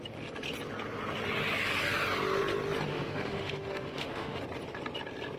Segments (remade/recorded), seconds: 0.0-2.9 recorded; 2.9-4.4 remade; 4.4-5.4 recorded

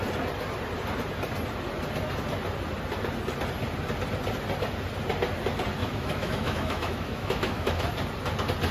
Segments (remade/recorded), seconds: 0.0-5.8 recorded; 5.8-7.8 remade; 7.8-8.7 recorded

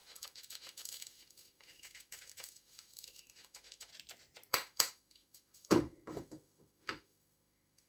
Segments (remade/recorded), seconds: 0.0-3.9 remade; 3.9-4.5 recorded; 4.5-7.9 remade

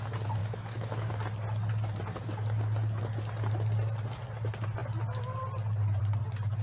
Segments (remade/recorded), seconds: 0.0-0.4 recorded; 0.4-1.1 remade; 1.1-6.6 recorded

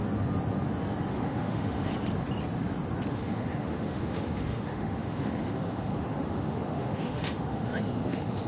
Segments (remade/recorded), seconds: 0.0-1.1 recorded; 1.1-1.9 remade; 1.9-3.1 recorded; 3.1-8.5 remade